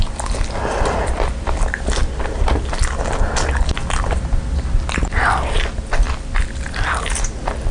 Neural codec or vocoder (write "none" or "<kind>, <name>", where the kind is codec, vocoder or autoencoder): none